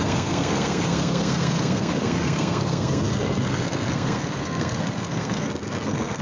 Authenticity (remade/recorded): remade